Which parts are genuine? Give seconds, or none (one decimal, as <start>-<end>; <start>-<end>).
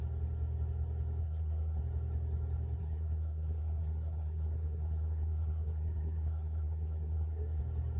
0.0-1.2; 1.8-2.8; 7.6-8.0